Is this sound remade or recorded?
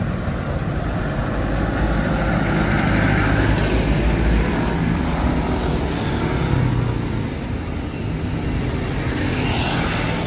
recorded